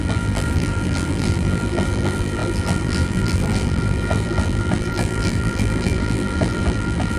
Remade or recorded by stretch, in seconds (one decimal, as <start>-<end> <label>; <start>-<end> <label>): 0.0-7.2 remade